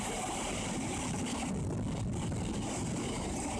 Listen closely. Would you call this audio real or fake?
real